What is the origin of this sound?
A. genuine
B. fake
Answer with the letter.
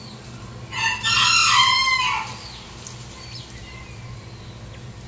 A